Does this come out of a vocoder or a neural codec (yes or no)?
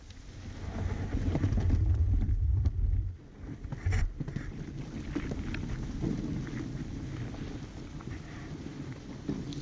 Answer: no